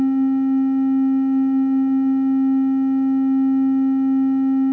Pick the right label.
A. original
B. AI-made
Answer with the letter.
A